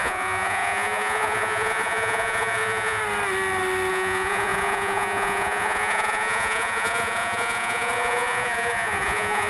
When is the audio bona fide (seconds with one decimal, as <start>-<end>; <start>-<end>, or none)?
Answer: 3.0-3.9

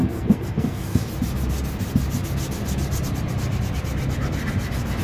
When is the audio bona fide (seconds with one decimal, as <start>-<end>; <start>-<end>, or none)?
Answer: 1.1-5.0

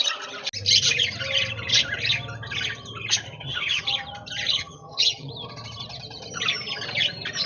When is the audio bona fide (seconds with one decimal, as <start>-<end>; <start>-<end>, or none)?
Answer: 0.0-3.3; 3.8-4.6; 5.3-7.5

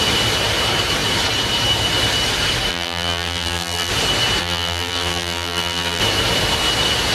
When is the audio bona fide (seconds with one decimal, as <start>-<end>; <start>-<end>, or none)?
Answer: 0.0-2.7; 3.9-4.4; 6.0-7.1

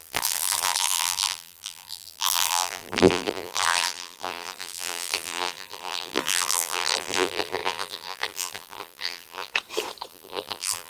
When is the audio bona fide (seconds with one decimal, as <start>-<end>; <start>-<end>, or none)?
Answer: 9.5-10.1

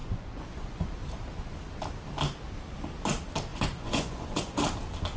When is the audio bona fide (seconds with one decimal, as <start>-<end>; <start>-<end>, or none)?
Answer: 0.9-3.5; 4.6-5.2

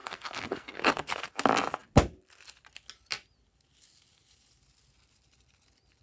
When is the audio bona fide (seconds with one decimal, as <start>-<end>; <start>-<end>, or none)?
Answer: 1.3-6.0

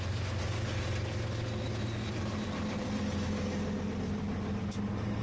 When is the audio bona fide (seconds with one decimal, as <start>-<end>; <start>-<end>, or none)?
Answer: 0.0-5.2